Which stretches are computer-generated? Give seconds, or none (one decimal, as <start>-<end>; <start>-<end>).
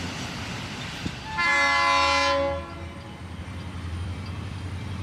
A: 0.0-1.5; 3.4-5.0